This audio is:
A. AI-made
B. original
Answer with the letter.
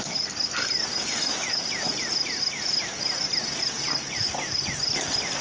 B